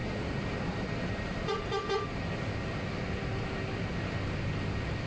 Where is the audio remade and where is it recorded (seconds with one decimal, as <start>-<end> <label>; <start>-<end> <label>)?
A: 0.0-5.1 recorded